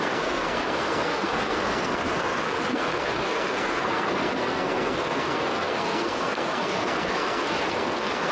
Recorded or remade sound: remade